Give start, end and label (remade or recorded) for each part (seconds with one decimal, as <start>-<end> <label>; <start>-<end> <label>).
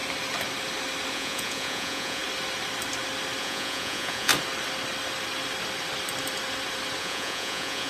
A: 0.0-1.1 recorded; 1.1-2.2 remade; 2.2-3.4 recorded; 3.4-4.3 remade; 4.3-7.0 recorded; 7.0-7.9 remade